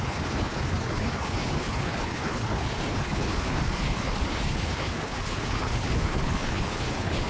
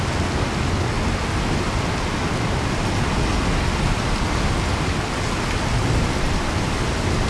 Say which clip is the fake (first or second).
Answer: first